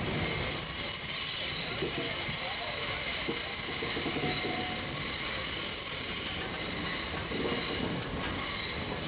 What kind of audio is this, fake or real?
real